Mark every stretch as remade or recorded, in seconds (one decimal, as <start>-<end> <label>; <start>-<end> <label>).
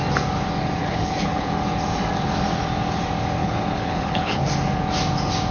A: 0.0-0.8 recorded; 0.8-1.5 remade; 1.5-3.4 recorded; 3.4-4.5 remade; 4.5-5.5 recorded